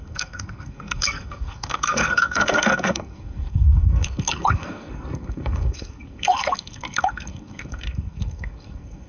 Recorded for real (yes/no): no